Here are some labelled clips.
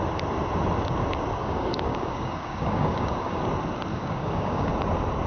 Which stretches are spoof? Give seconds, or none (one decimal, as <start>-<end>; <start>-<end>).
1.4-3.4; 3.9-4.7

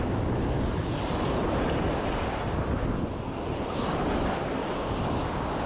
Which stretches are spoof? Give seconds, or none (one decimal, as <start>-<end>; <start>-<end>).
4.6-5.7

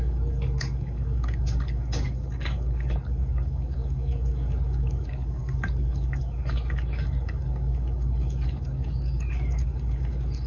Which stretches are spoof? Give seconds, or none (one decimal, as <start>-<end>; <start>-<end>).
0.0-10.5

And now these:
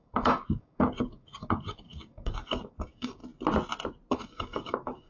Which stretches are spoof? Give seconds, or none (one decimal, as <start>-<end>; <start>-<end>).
0.0-3.2; 4.1-5.1